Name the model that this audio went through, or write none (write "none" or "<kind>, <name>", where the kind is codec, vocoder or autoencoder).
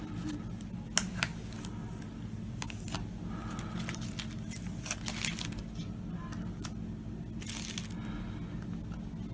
none